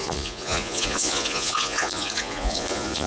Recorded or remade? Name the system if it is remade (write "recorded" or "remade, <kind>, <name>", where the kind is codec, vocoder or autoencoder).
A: remade, vocoder, Vocos